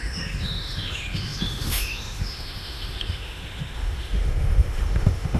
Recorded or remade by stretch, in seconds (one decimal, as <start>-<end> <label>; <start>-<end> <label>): 0.0-5.4 remade